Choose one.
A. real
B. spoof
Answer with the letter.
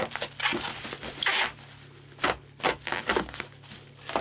A